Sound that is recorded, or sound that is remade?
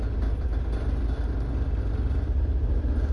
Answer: recorded